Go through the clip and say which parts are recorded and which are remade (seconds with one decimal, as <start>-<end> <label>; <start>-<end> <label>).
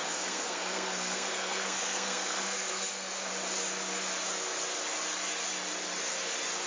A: 0.0-3.3 remade; 3.3-6.7 recorded